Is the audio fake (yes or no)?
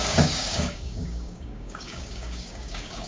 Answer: yes